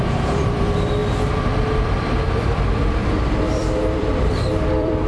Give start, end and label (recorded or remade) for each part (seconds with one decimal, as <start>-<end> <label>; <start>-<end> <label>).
0.0-1.0 remade; 1.0-1.9 recorded; 1.9-3.0 remade; 3.0-3.5 recorded; 3.5-5.1 remade